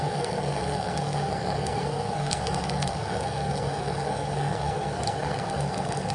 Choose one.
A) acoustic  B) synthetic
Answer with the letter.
B